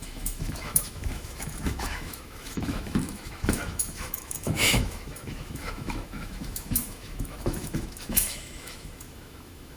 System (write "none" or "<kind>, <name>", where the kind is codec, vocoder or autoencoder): autoencoder, DAC-VAE